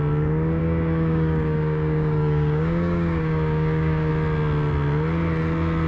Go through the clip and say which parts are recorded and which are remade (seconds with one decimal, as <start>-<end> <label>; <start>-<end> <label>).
0.0-0.6 recorded; 0.6-4.1 remade; 4.1-5.9 recorded